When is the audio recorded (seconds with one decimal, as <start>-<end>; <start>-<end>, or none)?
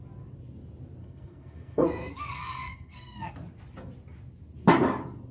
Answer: 0.0-1.0; 3.3-5.3